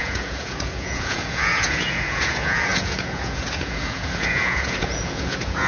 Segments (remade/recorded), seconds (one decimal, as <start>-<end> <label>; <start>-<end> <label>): 0.0-5.7 remade